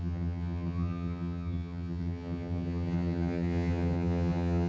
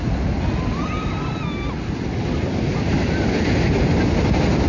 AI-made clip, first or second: first